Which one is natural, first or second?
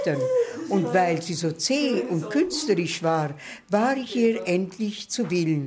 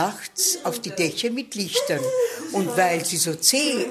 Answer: first